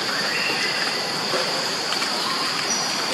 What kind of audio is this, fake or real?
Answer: fake